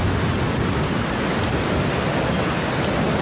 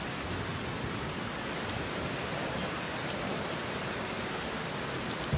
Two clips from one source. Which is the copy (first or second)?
second